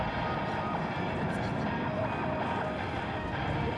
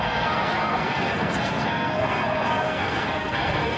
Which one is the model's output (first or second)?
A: second